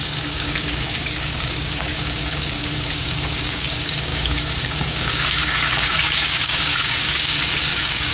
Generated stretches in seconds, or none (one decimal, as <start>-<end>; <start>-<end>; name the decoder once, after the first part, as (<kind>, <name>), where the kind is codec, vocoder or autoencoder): 0.0-8.1 (codec, DAC)